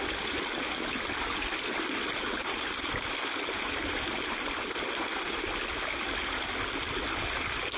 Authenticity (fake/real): real